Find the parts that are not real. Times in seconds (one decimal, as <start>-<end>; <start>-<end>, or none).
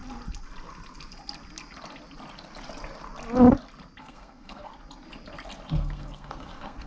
4.0-4.7; 5.7-6.9